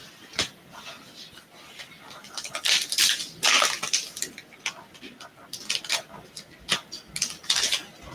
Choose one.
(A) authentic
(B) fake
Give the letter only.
A